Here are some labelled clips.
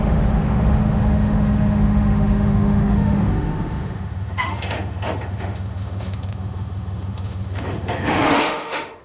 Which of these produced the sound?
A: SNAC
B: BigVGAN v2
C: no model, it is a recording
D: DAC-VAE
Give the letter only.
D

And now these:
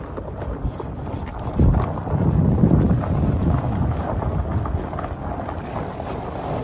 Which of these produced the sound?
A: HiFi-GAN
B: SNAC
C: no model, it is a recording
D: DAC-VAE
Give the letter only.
C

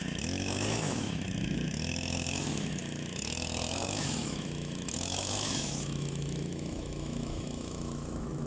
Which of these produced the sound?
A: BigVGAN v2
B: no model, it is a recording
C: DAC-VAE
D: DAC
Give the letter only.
C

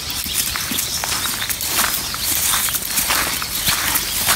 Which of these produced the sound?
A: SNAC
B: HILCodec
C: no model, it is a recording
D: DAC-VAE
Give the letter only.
C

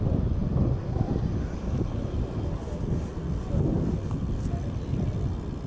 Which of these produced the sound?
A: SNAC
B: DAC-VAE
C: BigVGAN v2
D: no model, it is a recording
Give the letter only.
D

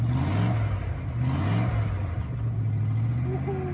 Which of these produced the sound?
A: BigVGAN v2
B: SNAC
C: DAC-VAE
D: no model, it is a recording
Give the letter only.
D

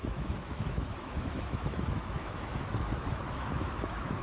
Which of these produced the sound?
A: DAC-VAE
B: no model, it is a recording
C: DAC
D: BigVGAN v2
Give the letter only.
A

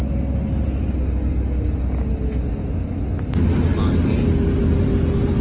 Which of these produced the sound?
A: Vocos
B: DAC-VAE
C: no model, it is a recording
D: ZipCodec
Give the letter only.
C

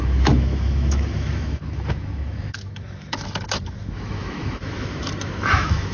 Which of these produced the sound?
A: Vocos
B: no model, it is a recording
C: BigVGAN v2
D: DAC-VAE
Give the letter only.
D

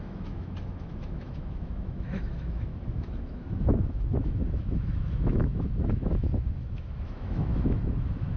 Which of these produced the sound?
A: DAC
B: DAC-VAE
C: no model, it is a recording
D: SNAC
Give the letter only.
B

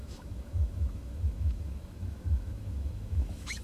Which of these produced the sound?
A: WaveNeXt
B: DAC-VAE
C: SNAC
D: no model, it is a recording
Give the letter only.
B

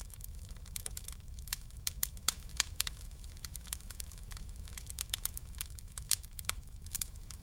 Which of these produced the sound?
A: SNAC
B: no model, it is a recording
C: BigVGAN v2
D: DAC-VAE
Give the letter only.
D